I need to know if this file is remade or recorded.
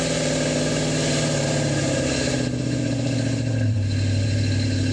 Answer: remade